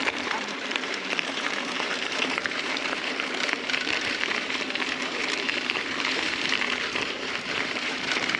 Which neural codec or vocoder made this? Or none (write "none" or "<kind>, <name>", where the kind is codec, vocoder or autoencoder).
vocoder, BigVGAN v2